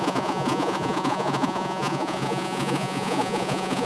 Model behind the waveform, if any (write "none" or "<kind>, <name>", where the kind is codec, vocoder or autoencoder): vocoder, Vocos